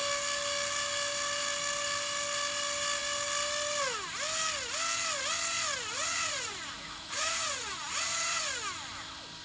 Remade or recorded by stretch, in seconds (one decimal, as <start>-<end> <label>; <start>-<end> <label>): 0.0-5.9 recorded; 5.9-8.4 remade; 8.4-9.4 recorded